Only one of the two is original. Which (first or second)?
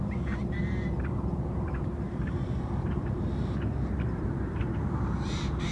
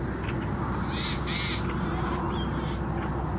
second